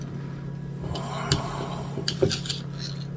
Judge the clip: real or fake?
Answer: real